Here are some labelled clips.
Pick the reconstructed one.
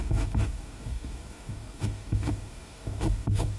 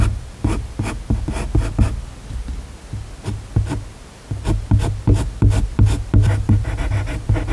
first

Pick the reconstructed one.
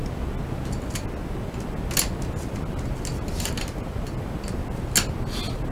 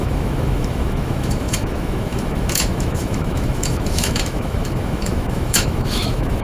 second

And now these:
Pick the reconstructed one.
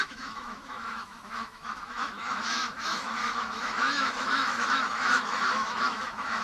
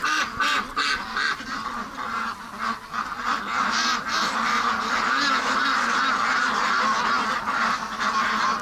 first